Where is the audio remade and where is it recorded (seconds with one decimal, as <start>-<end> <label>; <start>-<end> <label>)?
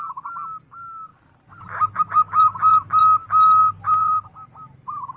0.0-1.1 recorded; 1.1-3.0 remade; 3.0-3.6 recorded; 3.6-5.2 remade